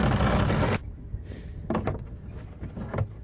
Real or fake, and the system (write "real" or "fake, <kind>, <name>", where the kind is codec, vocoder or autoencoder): real